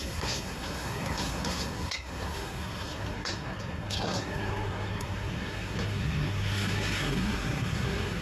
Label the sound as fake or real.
fake